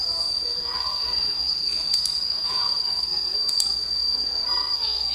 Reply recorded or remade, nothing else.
remade